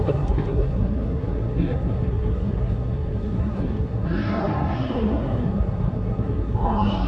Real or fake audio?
fake